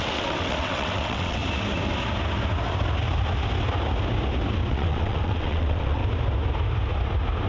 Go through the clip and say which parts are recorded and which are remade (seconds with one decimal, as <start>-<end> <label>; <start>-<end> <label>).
0.0-1.4 remade; 1.4-4.7 recorded; 4.7-6.0 remade; 6.0-7.5 recorded

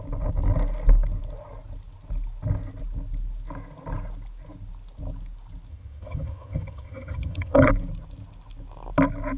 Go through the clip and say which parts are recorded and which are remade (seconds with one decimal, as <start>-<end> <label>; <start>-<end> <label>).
0.0-5.7 recorded; 5.7-7.7 remade; 7.7-9.4 recorded

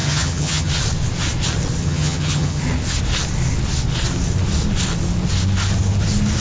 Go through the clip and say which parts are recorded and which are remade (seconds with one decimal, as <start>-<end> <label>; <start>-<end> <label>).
0.0-0.7 remade; 0.7-1.8 recorded; 1.8-2.6 remade; 2.6-6.4 recorded

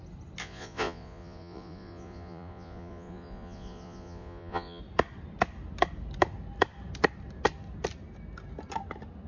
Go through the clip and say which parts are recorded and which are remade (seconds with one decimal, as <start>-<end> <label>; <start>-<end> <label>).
0.0-0.4 recorded; 0.4-4.8 remade; 4.8-9.3 recorded

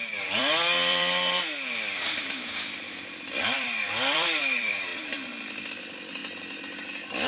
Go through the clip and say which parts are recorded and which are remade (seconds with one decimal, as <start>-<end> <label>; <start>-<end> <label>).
0.0-4.9 remade; 4.9-5.5 recorded; 5.5-6.2 remade; 6.2-7.3 recorded

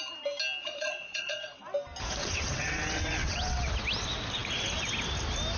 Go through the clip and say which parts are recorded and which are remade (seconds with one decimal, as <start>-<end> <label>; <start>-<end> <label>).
0.0-0.6 recorded; 0.6-1.6 remade; 1.6-2.2 recorded; 2.2-3.7 remade; 3.7-5.6 recorded

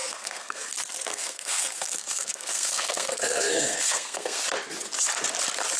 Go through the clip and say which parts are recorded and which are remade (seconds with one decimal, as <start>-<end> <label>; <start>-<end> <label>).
0.0-0.7 remade; 0.7-1.1 recorded; 1.1-4.4 remade; 4.4-5.8 recorded